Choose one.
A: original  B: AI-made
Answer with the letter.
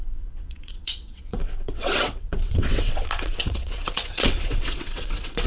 B